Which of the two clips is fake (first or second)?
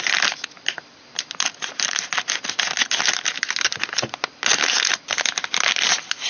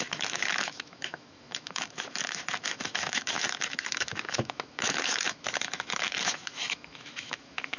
second